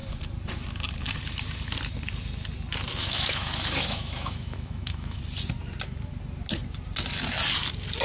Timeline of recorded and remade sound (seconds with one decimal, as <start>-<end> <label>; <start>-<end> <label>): 0.0-3.0 recorded; 3.0-5.2 remade; 5.2-8.0 recorded